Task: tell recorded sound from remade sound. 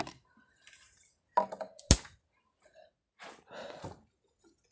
recorded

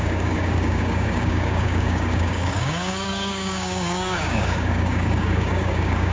remade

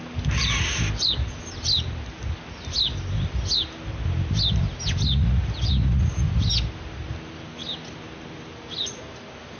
recorded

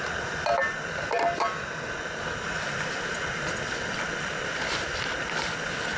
recorded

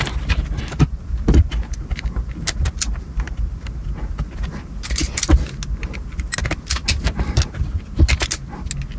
recorded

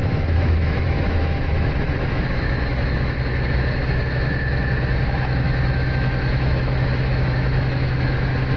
remade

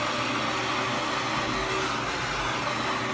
recorded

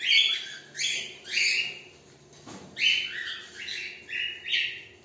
recorded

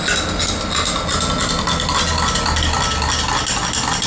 recorded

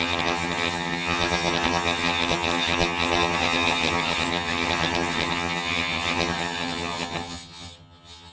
remade